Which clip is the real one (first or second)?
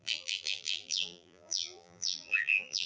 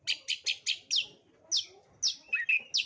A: second